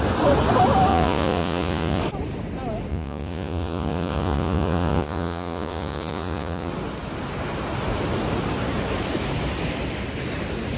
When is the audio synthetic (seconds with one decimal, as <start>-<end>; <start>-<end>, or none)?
0.9-2.0; 2.9-6.7